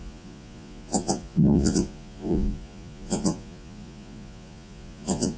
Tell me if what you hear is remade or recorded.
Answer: remade